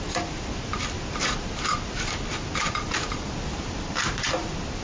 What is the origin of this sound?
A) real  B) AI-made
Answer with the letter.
B